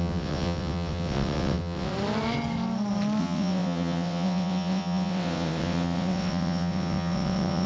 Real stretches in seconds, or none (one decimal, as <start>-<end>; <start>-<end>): 1.9-3.2